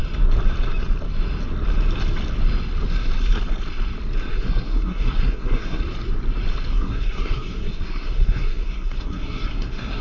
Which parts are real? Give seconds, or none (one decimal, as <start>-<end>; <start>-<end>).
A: 0.0-4.3; 5.8-6.7